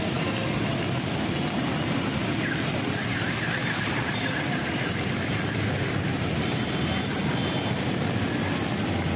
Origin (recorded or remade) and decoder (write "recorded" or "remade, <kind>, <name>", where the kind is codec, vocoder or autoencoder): recorded